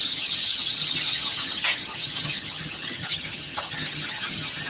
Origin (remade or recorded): remade